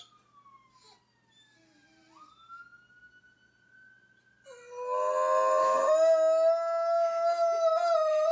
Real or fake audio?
real